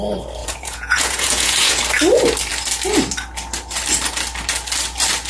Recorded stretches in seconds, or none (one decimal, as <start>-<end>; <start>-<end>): 0.0-0.4; 1.8-5.3